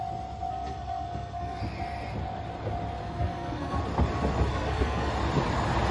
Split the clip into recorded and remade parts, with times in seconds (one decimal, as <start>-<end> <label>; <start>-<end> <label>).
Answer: 0.0-0.5 recorded; 0.5-1.6 remade; 1.6-3.0 recorded; 3.0-3.8 remade; 3.8-4.5 recorded; 4.5-5.1 remade; 5.1-5.9 recorded